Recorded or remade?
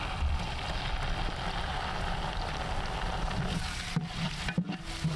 recorded